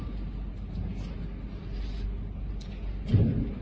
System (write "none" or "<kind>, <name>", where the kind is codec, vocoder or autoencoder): none